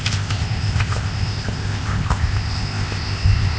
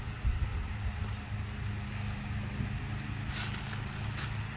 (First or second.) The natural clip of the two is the second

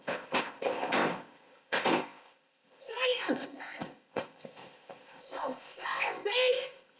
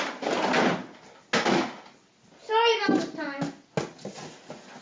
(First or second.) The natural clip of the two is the second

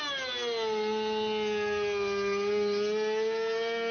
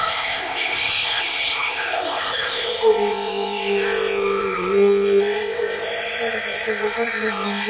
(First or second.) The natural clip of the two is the first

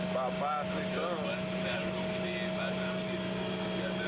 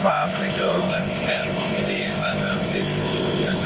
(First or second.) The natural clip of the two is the first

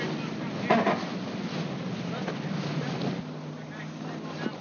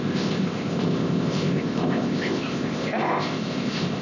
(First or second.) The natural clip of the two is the first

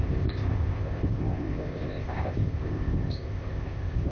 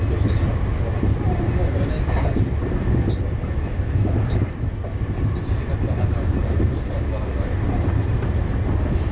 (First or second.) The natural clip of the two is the second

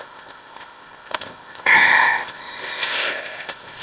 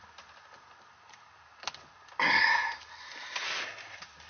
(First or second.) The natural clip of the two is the second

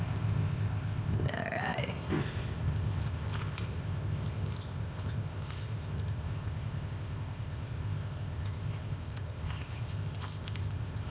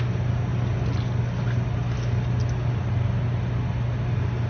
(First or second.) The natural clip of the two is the second